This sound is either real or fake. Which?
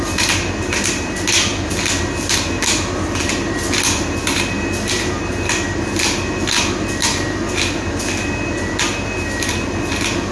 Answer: real